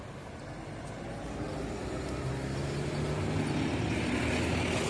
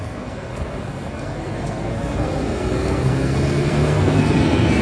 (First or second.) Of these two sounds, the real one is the first